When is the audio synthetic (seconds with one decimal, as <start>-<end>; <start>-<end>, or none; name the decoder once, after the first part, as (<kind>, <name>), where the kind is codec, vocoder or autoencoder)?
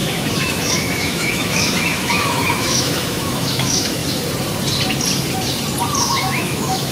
0.0-4.0 (autoencoder, DAC-VAE); 6.0-6.9